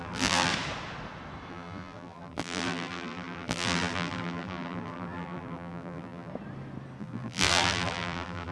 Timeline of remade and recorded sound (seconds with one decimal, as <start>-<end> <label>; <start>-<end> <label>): 0.0-0.5 remade; 0.5-1.5 recorded; 1.5-6.3 remade; 6.3-7.0 recorded; 7.0-8.5 remade